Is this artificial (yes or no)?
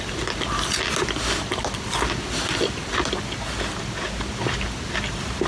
no